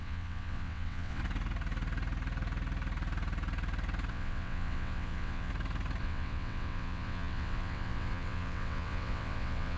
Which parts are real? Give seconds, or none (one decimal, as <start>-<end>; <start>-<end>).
1.2-4.1; 5.5-6.0